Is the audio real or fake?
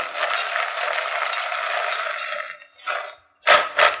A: real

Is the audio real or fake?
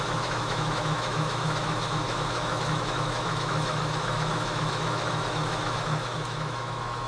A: fake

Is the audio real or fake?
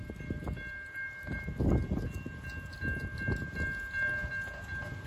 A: real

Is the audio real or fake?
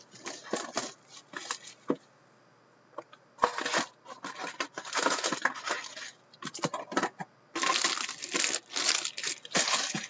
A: real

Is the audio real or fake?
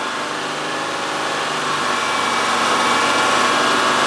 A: real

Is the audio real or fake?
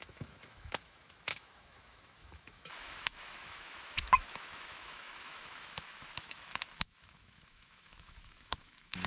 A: fake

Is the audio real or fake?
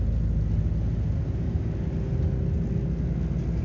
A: real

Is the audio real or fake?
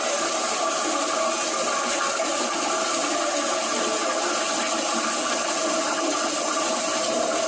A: real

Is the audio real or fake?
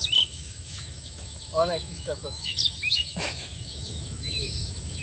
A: fake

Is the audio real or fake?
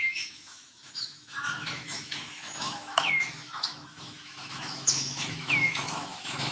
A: fake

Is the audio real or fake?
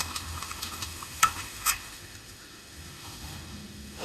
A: fake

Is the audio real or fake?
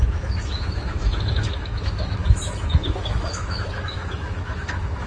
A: fake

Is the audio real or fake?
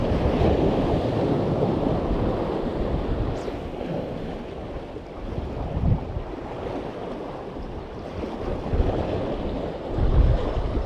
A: real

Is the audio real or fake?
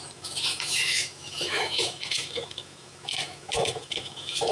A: fake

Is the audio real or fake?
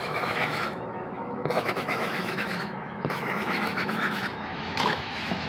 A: fake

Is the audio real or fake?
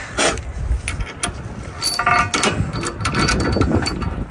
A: real